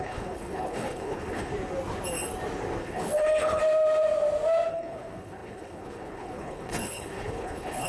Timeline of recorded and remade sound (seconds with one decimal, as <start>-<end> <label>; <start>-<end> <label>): 0.0-1.5 remade; 1.5-2.8 recorded; 2.8-3.6 remade; 3.6-4.7 recorded; 4.7-7.9 remade